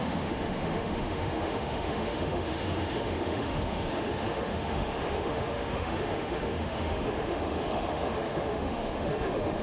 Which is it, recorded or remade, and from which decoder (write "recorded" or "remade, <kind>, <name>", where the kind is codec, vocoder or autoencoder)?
remade, autoencoder, DAC-VAE